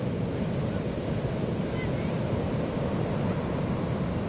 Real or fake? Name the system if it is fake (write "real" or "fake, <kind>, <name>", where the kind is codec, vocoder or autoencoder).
real